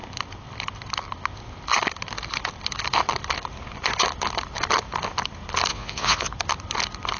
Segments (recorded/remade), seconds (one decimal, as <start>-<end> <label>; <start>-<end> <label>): 0.0-5.7 recorded; 5.7-6.3 remade; 6.3-7.2 recorded